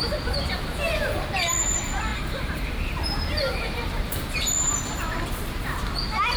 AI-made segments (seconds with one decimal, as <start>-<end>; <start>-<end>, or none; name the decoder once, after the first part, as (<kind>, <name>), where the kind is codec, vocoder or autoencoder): 2.1-4.3 (vocoder, BigVGAN v2)